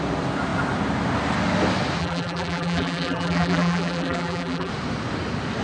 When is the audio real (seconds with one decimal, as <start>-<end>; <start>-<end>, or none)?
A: 0.0-2.0; 4.7-5.6